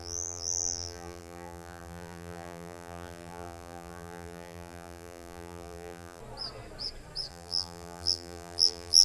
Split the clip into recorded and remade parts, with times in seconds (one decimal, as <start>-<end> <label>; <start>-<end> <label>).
0.0-6.2 remade; 6.2-7.3 recorded; 7.3-9.0 remade